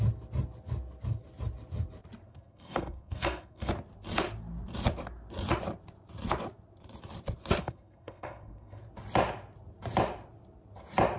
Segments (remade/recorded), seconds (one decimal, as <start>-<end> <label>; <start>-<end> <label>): 0.0-2.3 recorded; 2.3-3.7 remade; 3.7-7.6 recorded; 7.6-8.8 remade; 8.8-11.2 recorded